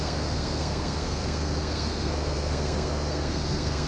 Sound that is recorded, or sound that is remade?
remade